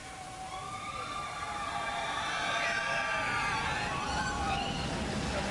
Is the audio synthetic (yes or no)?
no